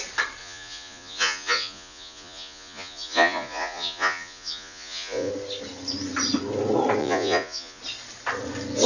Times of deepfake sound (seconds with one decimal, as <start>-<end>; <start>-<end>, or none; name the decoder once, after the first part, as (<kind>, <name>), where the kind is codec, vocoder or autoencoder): 0.4-5.3 (vocoder, Vocos); 7.0-7.8